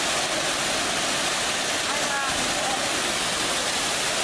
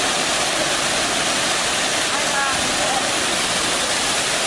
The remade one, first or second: second